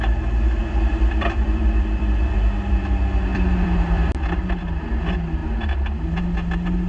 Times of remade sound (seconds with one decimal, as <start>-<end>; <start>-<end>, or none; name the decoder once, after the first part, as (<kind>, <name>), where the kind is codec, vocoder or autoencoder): 0.6-2.2 (vocoder, BigVGAN v2); 3.3-4.1